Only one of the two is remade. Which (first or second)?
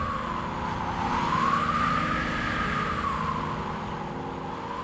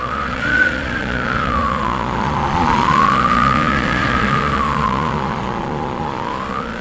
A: second